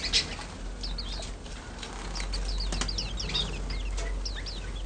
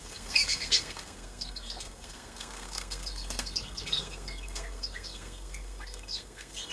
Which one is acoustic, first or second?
first